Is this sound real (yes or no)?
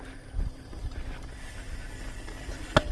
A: yes